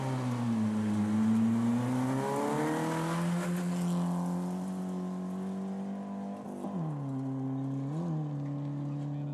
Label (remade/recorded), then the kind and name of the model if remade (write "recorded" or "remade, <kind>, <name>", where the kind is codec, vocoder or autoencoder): recorded